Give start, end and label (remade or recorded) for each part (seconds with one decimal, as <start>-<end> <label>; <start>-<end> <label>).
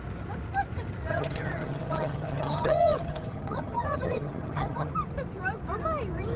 0.0-1.1 recorded; 1.1-4.9 remade; 4.9-6.4 recorded